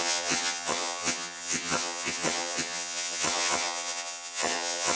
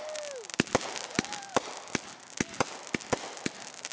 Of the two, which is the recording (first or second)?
second